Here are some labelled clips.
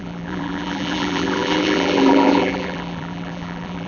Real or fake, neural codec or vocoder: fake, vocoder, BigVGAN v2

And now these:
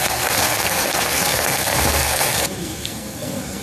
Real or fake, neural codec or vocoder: fake, codec, SNAC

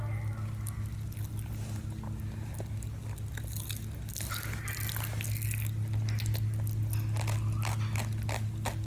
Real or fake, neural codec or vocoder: real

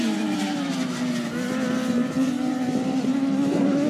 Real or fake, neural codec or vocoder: real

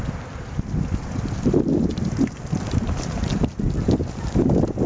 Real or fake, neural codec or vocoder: real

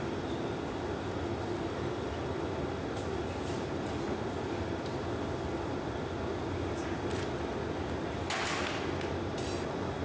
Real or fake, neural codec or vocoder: real